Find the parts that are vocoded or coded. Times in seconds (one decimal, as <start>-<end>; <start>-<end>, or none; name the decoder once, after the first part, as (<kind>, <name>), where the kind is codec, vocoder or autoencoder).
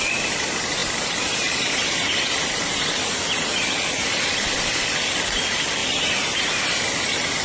none